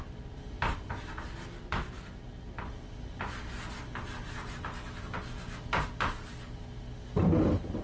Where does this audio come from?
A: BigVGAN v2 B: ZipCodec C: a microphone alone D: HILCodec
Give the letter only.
C